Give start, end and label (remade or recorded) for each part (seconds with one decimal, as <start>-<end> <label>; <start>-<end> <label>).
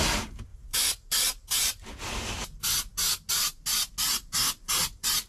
0.0-0.5 recorded; 0.5-1.8 remade; 1.8-5.3 recorded